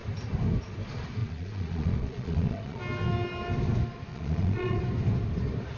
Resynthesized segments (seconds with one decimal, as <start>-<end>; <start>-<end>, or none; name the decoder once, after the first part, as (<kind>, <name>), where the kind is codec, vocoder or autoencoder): 1.2-2.8 (vocoder, Vocos); 4.1-4.8